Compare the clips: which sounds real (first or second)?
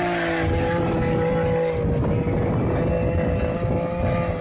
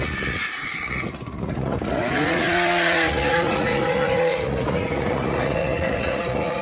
first